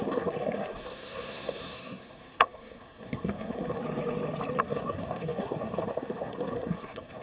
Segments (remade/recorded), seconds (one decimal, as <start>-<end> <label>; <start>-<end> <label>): 0.0-3.8 remade; 3.8-4.6 recorded; 4.6-7.2 remade